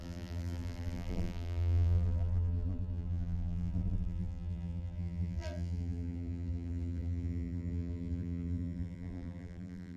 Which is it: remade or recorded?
remade